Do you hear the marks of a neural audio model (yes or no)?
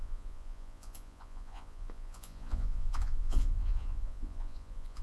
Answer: yes